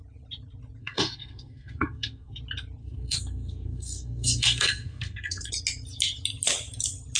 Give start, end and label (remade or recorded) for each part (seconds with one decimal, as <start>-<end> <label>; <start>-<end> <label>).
0.0-0.8 recorded; 0.8-2.4 remade; 2.4-2.8 recorded; 2.8-5.5 remade; 5.5-7.2 recorded